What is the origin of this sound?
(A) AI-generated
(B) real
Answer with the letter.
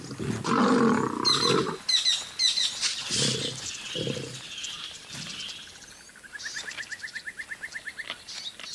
B